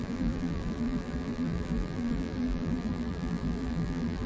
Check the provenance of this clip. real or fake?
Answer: fake